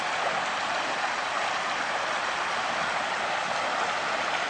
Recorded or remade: recorded